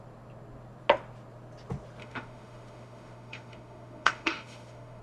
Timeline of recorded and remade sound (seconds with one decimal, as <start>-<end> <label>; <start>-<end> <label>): 0.0-2.0 recorded; 2.0-5.0 remade